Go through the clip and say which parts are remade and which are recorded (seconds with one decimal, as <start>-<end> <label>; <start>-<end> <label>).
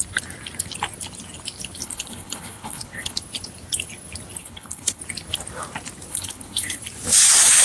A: 0.0-1.8 recorded; 1.8-3.2 remade; 3.2-4.4 recorded; 4.4-5.0 remade; 5.0-6.1 recorded; 6.1-6.8 remade; 6.8-7.6 recorded